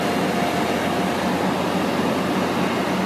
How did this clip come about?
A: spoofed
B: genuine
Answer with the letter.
B